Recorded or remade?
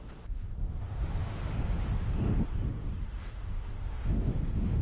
remade